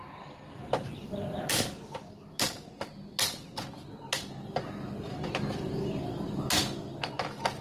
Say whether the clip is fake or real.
real